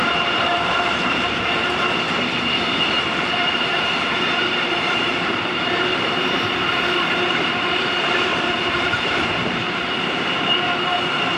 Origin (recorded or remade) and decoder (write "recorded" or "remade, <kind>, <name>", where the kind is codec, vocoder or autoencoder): remade, vocoder, BigVGAN v2